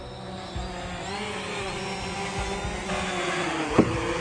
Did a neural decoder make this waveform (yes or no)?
no